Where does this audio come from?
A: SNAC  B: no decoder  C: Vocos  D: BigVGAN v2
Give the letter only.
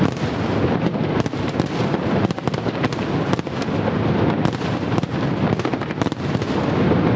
B